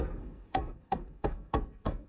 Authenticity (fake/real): fake